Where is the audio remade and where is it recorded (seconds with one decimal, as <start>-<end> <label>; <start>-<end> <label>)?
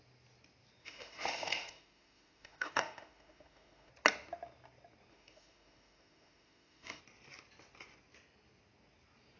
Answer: 0.0-0.8 recorded; 0.8-3.9 remade; 3.9-5.1 recorded; 5.1-7.0 remade; 7.0-9.4 recorded